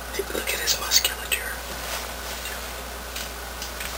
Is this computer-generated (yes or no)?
no